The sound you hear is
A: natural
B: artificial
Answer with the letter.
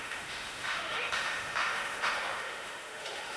B